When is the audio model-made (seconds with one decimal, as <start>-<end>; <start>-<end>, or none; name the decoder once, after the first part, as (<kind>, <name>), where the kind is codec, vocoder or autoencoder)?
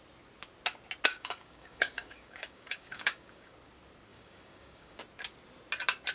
1.1-3.5 (codec, DAC); 4.1-5.0